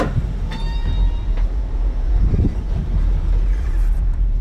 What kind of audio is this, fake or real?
fake